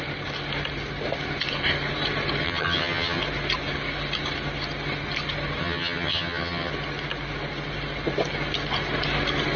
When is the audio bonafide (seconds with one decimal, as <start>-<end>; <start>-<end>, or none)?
0.0-2.4; 3.2-5.6; 6.7-9.6